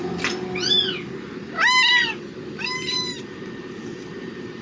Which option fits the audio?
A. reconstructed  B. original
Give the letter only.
A